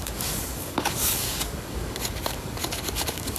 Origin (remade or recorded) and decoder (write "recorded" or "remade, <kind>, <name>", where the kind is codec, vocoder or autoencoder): remade, codec, DAC